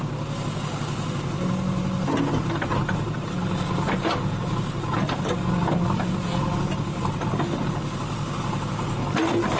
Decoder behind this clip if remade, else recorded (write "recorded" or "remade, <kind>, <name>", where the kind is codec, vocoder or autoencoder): recorded